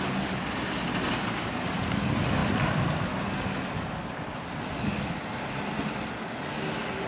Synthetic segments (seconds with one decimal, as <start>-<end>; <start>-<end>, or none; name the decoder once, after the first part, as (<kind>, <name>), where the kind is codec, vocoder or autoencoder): none